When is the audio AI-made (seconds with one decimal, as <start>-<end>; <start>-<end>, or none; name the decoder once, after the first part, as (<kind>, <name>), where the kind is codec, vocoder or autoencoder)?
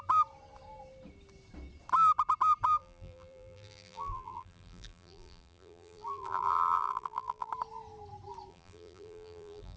2.8-7.5 (vocoder, BigVGAN v2); 8.5-9.8